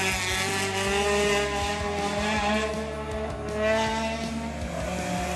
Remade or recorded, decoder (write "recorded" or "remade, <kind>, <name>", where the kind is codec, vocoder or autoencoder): recorded